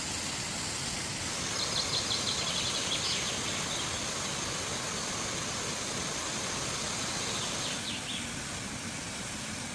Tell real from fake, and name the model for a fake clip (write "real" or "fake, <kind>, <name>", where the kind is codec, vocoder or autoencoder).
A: real